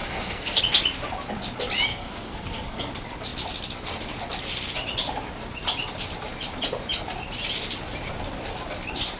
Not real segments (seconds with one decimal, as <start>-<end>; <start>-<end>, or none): 0.0-0.6; 1.9-2.9